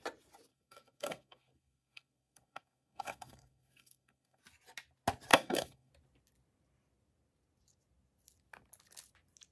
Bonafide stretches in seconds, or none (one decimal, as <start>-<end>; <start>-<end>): 0.0-0.5; 4.4-5.3; 5.9-9.5